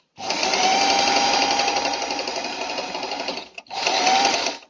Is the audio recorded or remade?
recorded